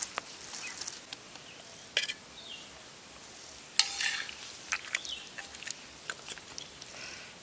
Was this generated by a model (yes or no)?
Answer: no